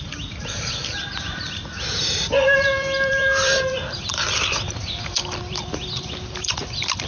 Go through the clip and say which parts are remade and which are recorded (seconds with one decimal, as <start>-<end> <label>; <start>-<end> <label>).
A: 0.0-1.0 remade; 1.0-2.0 recorded; 2.0-7.1 remade